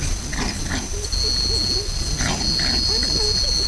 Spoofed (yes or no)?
no